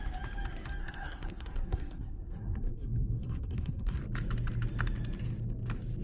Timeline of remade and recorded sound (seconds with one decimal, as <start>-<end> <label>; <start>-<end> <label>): 0.0-0.8 recorded; 0.8-4.0 remade; 4.0-6.0 recorded